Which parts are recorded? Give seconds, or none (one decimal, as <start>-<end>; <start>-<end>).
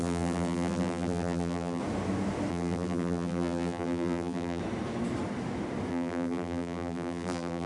1.8-2.5; 4.6-5.9